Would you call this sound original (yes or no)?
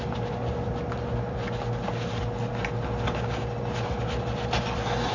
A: yes